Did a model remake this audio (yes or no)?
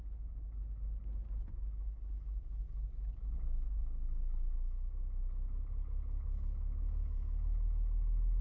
no